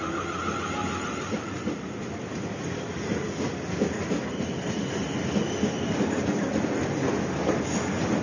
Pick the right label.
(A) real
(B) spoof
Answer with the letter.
A